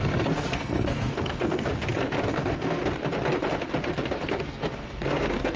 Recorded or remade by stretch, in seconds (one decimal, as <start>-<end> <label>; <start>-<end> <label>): 0.0-1.7 remade; 1.7-2.3 recorded; 2.3-2.8 remade; 2.8-4.4 recorded; 4.4-5.6 remade